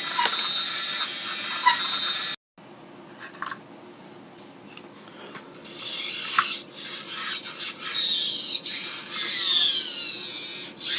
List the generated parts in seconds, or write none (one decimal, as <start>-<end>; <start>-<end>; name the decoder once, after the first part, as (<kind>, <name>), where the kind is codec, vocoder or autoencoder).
none